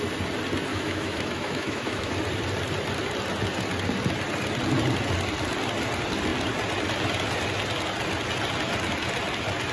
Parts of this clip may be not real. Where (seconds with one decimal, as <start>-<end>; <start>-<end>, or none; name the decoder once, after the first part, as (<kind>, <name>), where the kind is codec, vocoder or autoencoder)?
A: 0.7-2.1 (autoencoder, DAC-VAE)